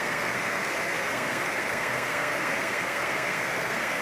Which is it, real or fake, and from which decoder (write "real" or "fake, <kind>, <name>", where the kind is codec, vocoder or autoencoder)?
fake, codec, SNAC